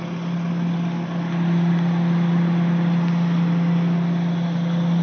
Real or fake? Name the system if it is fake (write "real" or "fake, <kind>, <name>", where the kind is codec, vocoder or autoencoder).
real